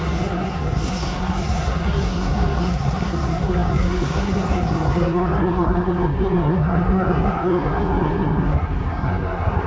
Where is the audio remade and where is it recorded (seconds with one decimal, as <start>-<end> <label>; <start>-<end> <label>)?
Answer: 0.0-9.7 remade